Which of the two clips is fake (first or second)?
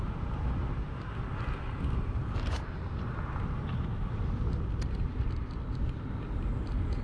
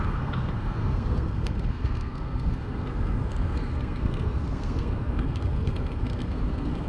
second